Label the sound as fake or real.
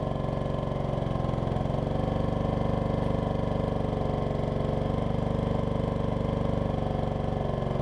real